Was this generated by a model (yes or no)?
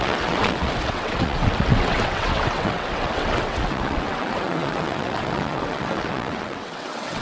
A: yes